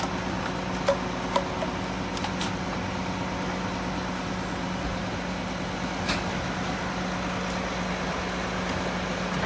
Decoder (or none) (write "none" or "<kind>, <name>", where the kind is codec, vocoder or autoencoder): none